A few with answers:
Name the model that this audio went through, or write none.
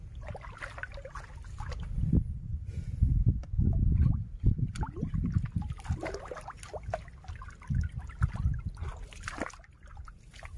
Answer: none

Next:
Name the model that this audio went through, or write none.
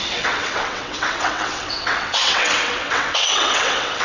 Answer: vocoder, WaveNeXt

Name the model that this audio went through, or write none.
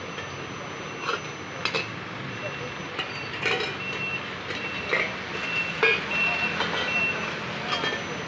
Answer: none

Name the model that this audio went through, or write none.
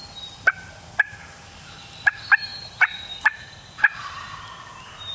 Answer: vocoder, BigVGAN v2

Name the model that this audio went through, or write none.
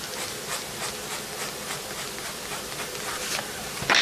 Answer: none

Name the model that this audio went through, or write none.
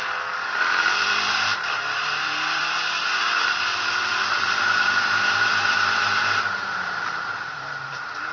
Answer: vocoder, BigVGAN v2